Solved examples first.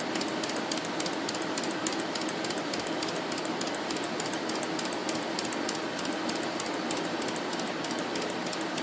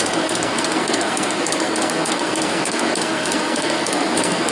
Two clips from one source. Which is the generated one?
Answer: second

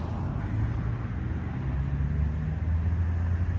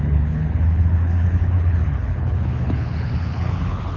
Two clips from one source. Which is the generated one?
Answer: second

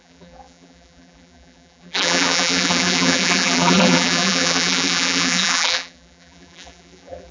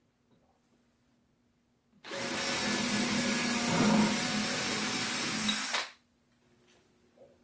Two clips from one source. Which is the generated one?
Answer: first